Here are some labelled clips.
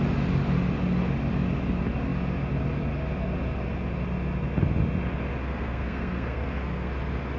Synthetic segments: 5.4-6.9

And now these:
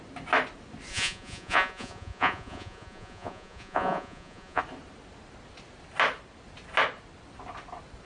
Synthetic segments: 0.9-4.6

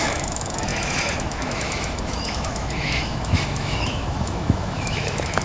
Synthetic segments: 0.0-5.4

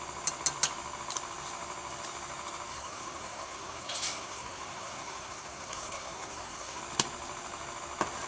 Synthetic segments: 2.7-6.8

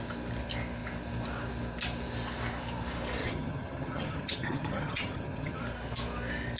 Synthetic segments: 3.2-5.6

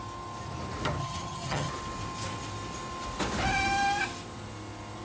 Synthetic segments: 1.0-1.7